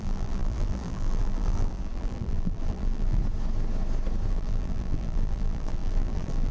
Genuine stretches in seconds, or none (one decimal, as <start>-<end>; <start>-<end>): 3.2-4.3